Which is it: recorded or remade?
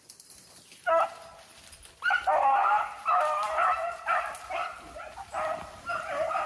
recorded